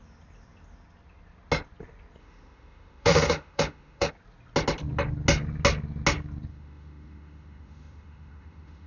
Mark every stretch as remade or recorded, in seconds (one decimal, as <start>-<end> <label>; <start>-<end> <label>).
0.0-2.2 recorded; 2.2-4.1 remade; 4.1-6.5 recorded; 6.5-8.9 remade